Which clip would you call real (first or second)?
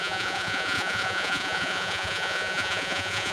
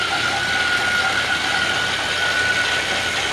second